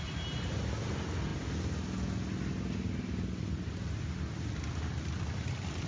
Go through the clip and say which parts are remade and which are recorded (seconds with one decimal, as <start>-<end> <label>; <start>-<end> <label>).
0.0-5.9 recorded